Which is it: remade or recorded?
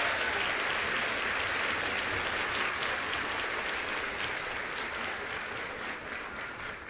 recorded